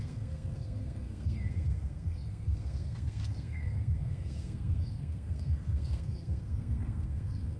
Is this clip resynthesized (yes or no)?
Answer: yes